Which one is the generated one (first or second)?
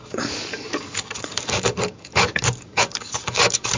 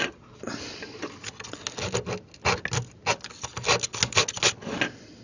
first